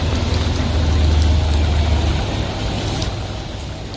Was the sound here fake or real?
real